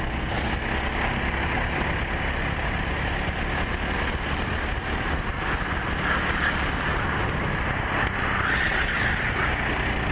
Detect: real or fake real